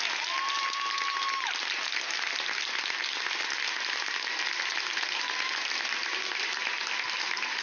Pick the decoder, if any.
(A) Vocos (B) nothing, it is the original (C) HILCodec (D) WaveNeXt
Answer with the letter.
B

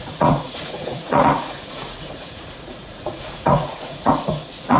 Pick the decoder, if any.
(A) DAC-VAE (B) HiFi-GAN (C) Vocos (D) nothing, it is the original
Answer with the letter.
C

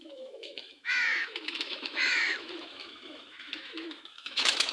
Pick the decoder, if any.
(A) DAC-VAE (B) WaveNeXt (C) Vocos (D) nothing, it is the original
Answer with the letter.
A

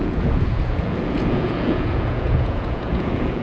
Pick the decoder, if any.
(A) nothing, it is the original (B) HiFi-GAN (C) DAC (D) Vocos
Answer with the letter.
D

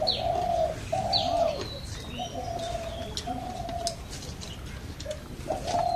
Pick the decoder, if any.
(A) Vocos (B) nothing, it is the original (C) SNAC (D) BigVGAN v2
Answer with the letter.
B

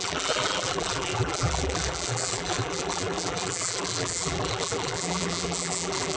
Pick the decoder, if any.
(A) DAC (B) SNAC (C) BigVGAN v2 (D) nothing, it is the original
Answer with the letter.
C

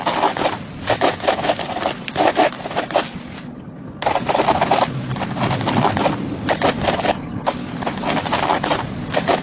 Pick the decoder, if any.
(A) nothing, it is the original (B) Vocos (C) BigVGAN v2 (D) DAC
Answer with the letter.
A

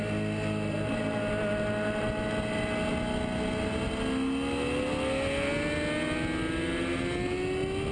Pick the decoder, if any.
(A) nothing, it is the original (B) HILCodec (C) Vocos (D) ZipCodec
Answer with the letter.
A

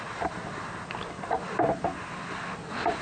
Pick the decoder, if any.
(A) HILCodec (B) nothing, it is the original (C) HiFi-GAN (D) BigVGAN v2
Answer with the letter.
B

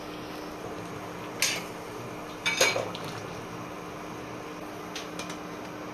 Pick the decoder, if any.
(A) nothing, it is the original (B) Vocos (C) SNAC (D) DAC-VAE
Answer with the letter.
A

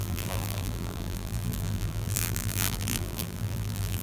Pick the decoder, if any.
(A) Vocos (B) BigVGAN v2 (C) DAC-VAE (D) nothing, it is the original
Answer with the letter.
B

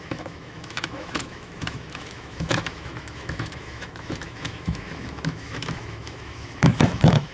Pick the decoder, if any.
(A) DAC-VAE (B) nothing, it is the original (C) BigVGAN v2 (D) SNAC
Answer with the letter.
A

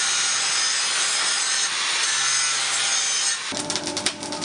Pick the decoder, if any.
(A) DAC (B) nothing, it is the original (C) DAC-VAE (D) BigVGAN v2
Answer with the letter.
B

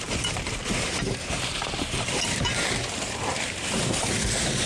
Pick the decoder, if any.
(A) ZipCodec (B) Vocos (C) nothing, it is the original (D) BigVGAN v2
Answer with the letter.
D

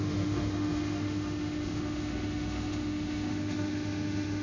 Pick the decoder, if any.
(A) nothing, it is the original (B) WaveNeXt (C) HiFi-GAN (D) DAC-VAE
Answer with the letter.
D